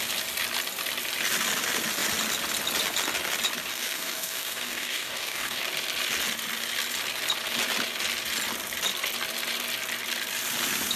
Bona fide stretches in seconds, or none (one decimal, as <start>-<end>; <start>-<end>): 0.0-3.7; 5.6-11.0